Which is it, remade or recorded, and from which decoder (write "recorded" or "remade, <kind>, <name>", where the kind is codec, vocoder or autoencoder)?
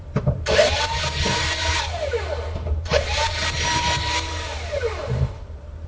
remade, vocoder, BigVGAN v2